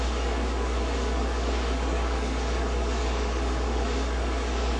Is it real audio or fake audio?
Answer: fake